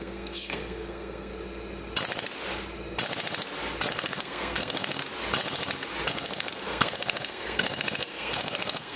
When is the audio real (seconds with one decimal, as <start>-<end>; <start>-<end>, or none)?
1.3-3.9; 5.0-6.1